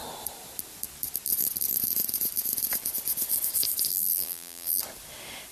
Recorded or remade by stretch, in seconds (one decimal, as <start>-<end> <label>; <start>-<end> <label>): 0.0-3.9 recorded; 3.9-4.8 remade; 4.8-5.5 recorded